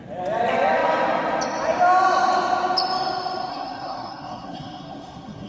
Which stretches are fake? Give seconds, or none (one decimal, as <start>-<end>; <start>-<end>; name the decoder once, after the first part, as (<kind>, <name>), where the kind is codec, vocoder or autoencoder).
3.5-5.5 (codec, SNAC)